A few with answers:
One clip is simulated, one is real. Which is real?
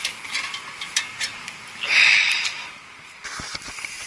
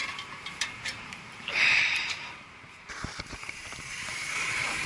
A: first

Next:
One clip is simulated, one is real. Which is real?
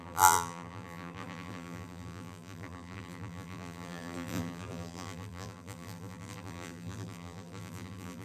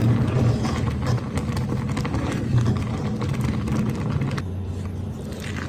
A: second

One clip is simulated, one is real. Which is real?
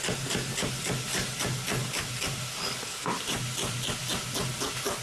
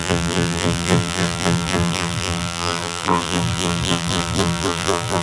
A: first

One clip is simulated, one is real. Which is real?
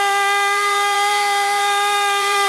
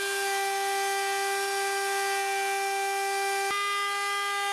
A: second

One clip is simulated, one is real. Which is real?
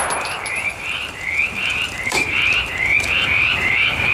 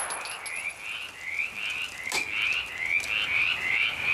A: second